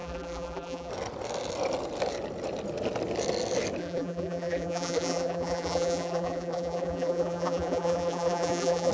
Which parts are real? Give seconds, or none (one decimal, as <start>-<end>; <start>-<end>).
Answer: 0.9-3.8